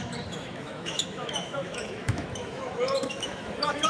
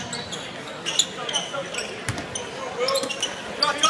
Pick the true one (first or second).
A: second